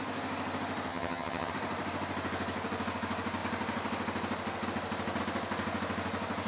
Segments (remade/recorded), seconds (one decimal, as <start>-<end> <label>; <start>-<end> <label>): 0.0-0.9 recorded; 0.9-1.5 remade; 1.5-6.5 recorded